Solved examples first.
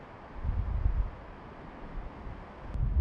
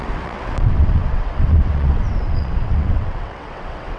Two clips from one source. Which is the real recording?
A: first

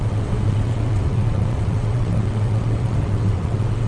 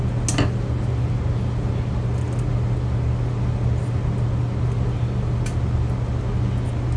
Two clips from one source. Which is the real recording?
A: second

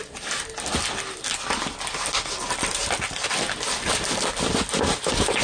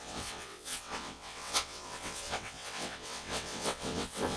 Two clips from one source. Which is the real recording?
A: first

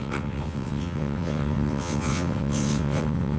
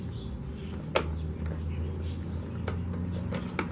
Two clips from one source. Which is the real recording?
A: second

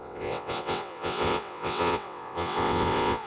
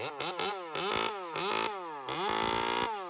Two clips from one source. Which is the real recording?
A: second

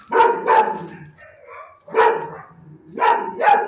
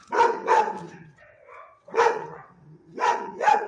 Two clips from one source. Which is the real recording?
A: first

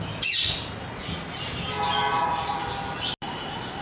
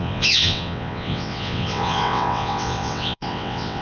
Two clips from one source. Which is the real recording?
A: first